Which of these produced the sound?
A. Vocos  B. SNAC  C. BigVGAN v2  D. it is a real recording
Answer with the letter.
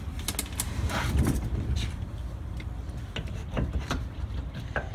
D